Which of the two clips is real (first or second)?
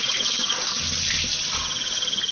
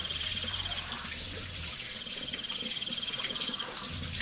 first